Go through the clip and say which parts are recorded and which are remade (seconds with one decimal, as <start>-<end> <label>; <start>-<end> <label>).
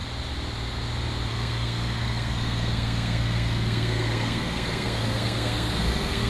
0.0-1.3 recorded; 1.3-6.3 remade